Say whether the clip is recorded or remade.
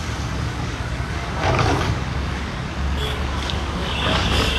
remade